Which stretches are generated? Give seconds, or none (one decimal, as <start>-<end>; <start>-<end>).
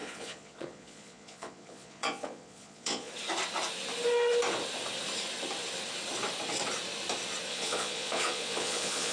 0.0-3.1; 7.5-9.1